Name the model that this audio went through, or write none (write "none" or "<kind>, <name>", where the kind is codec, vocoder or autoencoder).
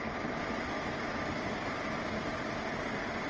none